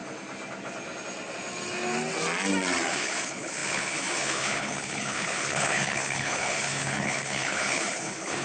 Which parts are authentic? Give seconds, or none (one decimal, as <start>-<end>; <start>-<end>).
0.0-2.9